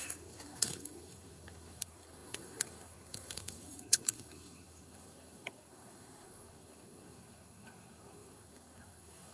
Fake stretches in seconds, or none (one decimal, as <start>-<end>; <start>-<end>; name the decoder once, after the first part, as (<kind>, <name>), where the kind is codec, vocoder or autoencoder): 0.0-9.3 (codec, SNAC)